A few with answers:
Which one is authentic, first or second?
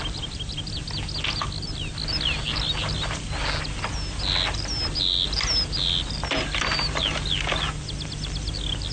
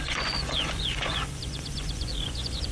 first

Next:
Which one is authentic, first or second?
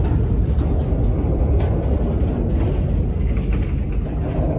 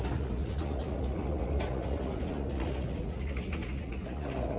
first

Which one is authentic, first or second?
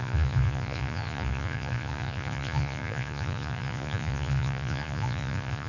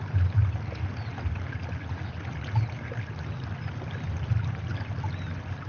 second